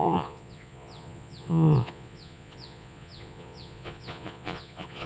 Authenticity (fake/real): fake